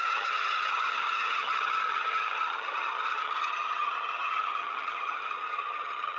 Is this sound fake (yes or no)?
yes